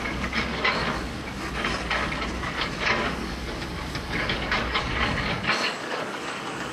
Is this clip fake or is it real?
fake